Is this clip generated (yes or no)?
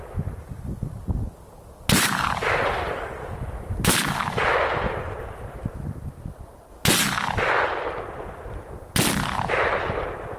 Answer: no